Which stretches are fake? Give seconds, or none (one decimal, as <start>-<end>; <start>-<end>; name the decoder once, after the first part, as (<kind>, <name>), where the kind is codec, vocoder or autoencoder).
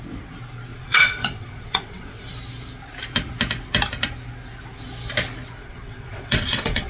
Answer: 0.7-2.3 (vocoder, WaveNeXt); 5.6-6.9